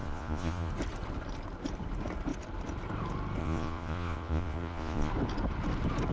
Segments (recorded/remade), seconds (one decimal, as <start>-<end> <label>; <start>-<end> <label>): 0.0-0.7 remade; 0.7-3.4 recorded; 3.4-5.1 remade; 5.1-6.1 recorded